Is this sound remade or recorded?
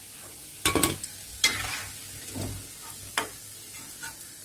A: recorded